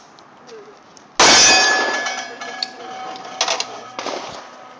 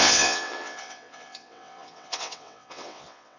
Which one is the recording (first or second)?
first